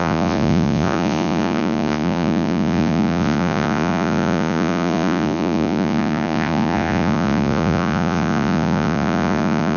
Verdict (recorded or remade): remade